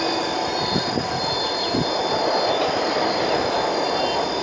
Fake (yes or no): no